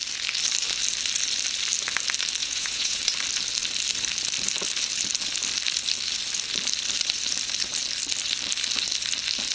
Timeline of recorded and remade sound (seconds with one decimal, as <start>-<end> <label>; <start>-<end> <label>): 0.0-2.4 recorded; 2.4-3.0 remade; 3.0-9.5 recorded